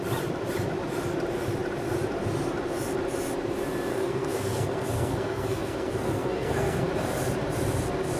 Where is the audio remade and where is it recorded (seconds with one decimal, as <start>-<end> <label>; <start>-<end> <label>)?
0.0-3.9 recorded; 3.9-6.9 remade; 6.9-8.2 recorded